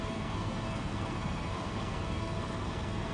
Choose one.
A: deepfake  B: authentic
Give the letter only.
A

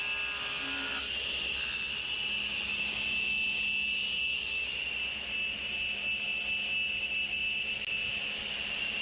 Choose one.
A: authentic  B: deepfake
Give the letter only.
A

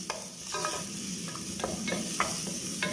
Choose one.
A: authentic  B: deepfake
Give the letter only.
A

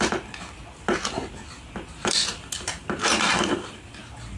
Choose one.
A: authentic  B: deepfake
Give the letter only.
A